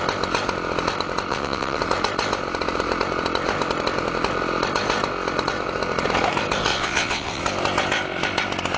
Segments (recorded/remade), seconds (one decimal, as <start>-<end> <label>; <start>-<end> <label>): 0.0-1.3 recorded; 1.3-1.8 remade; 1.8-6.7 recorded; 6.7-7.4 remade; 7.4-8.8 recorded